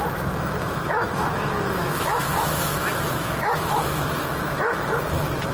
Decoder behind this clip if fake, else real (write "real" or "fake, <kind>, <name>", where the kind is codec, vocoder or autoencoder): fake, autoencoder, DAC-VAE